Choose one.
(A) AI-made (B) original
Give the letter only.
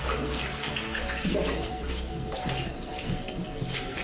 A